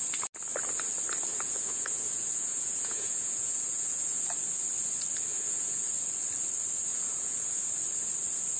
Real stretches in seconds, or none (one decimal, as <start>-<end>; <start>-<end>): 0.0-1.3; 4.2-5.3; 5.9-6.9; 7.6-8.6